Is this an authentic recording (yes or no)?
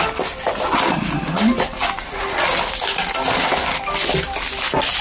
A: yes